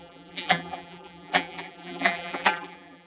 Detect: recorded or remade remade